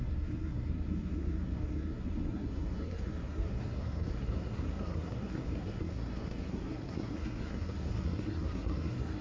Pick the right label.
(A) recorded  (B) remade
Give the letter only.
B